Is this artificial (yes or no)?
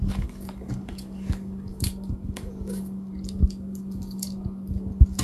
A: yes